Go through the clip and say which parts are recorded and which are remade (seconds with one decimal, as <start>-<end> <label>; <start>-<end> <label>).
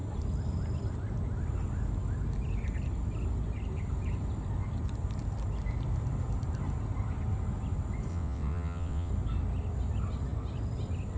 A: 0.0-8.1 recorded; 8.1-9.1 remade; 9.1-11.2 recorded